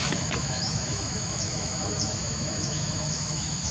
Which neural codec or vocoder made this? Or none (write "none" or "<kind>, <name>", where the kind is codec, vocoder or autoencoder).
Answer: autoencoder, DAC-VAE